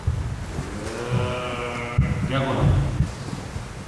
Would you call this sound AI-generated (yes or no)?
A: no